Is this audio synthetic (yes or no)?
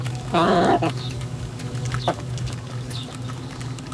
yes